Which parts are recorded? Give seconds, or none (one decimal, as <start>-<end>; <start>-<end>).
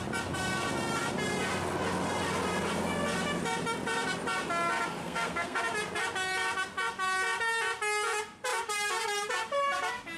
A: 0.0-5.0; 5.6-10.2